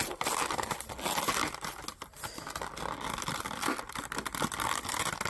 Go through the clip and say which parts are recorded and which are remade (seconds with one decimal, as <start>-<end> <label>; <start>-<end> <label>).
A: 0.0-1.9 recorded; 1.9-4.0 remade; 4.0-5.3 recorded